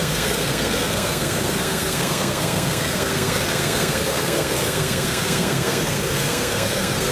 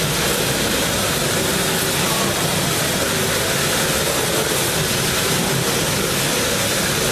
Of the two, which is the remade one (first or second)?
first